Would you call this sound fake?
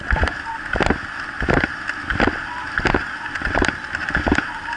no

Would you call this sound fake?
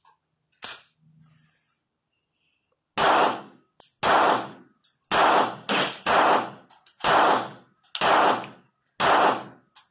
no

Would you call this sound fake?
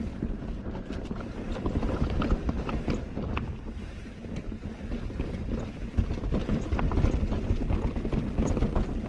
no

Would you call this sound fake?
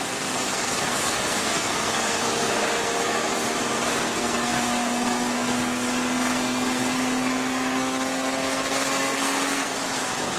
yes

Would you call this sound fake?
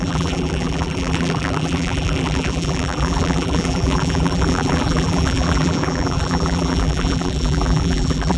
yes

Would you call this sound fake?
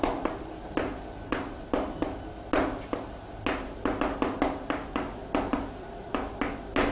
no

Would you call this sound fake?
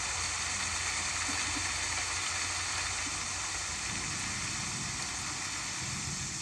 no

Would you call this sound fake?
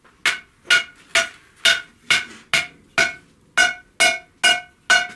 no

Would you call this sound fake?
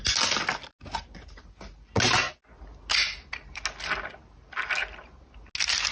no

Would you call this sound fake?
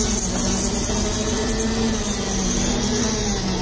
no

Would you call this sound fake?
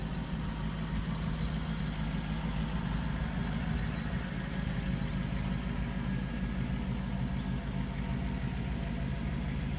no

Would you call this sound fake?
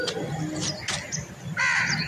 no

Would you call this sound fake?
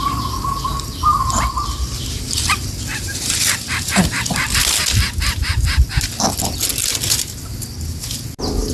no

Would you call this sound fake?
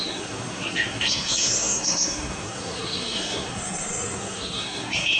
yes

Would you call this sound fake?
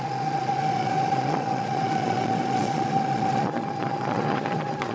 yes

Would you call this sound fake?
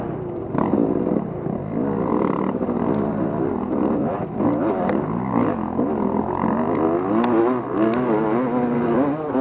no